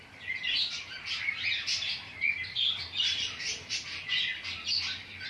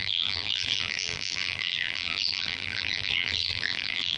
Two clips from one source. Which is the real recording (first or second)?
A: first